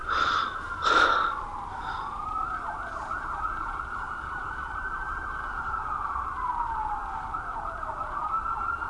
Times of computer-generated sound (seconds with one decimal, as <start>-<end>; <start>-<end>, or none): 2.1-8.9